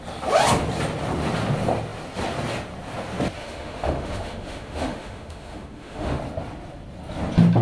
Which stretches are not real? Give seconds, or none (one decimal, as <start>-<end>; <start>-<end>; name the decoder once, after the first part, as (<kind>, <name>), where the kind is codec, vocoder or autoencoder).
3.4-6.2 (autoencoder, DAC-VAE)

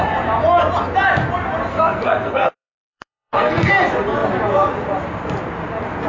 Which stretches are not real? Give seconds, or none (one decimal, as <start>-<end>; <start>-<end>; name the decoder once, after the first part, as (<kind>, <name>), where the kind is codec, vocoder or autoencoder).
1.7-3.7 (codec, SNAC)